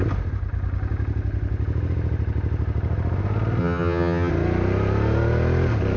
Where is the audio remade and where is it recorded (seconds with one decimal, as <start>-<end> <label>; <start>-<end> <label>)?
0.0-3.6 recorded; 3.6-4.3 remade; 4.3-6.0 recorded